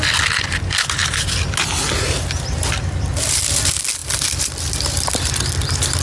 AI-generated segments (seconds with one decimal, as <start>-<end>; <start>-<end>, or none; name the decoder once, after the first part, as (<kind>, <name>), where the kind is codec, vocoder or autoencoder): none